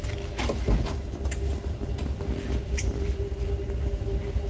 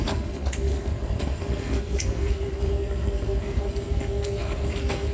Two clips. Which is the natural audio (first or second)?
first